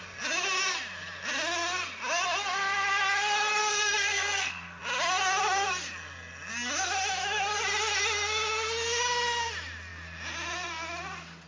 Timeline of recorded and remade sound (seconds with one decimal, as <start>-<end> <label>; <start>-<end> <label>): 0.0-3.6 recorded; 3.6-4.8 remade; 4.8-11.5 recorded